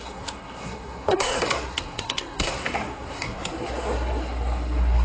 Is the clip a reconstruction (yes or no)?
yes